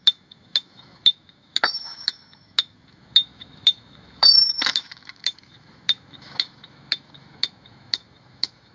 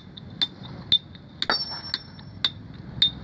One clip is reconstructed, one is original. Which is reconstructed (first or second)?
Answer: first